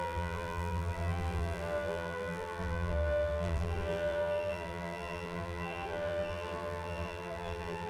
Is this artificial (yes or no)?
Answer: yes